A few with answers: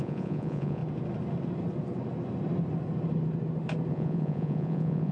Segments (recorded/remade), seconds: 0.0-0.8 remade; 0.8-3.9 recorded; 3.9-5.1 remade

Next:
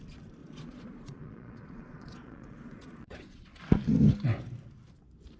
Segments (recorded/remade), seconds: 0.0-0.4 recorded; 0.4-3.6 remade; 3.6-5.4 recorded

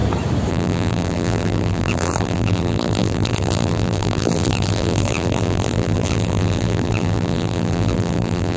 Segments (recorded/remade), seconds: 0.0-0.5 recorded; 0.5-8.6 remade